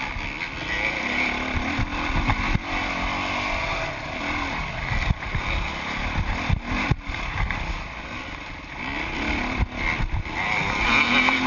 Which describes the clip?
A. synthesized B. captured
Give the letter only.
B